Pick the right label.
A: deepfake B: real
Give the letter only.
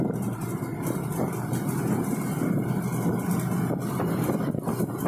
B